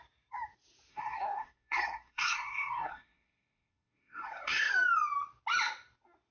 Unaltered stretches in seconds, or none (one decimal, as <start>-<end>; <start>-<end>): 0.0-0.9; 4.7-6.3